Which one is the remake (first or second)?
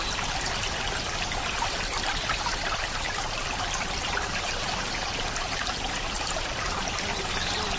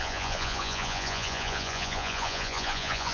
second